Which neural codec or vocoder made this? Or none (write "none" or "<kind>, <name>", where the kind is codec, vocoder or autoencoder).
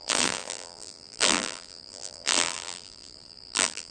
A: vocoder, BigVGAN v2